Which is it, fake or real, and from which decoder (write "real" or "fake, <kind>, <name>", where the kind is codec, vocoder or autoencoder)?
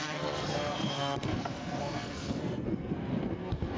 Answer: fake, codec, SNAC